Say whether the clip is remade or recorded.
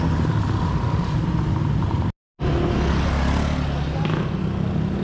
recorded